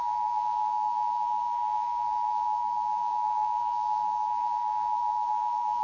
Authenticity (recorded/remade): remade